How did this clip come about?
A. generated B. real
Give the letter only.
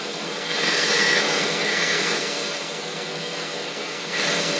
A